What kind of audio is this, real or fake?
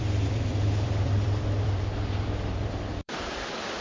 fake